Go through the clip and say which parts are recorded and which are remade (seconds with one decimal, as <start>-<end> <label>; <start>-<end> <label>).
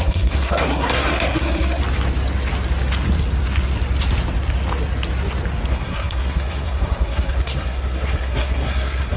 0.0-1.8 remade; 1.8-5.7 recorded; 5.7-9.2 remade